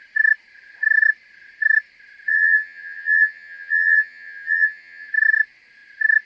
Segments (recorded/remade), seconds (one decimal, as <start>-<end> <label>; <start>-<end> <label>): 0.0-2.3 recorded; 2.3-5.1 remade; 5.1-6.3 recorded